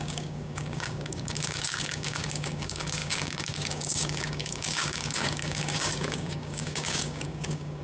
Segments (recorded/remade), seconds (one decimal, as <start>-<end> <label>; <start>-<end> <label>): 0.0-7.8 remade